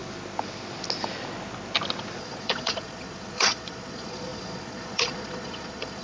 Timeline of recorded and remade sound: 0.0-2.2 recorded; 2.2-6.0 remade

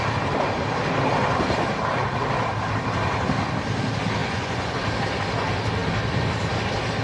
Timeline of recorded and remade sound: 0.0-4.2 recorded; 4.2-4.8 remade; 4.8-7.0 recorded